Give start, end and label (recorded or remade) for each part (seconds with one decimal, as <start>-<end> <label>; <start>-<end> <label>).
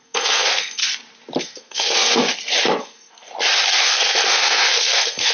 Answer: 0.0-0.8 remade; 0.8-1.4 recorded; 1.4-2.2 remade; 2.2-2.8 recorded; 2.8-3.3 remade; 3.3-3.8 recorded; 3.8-5.3 remade